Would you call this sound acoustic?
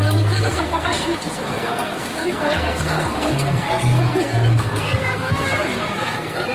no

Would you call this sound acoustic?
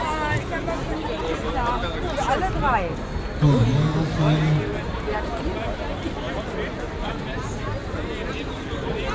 yes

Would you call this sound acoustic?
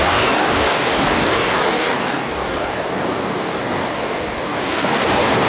no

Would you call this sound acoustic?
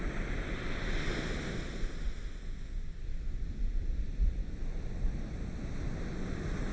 yes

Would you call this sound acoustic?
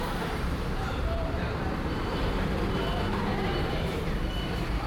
no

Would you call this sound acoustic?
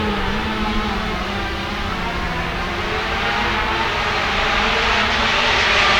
yes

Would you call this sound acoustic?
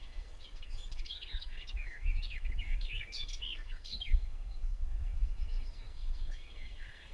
no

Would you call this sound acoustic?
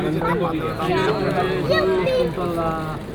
yes